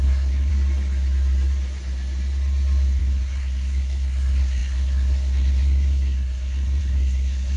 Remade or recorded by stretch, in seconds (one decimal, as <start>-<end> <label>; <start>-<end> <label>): 0.0-0.5 remade; 0.5-3.0 recorded; 3.0-7.6 remade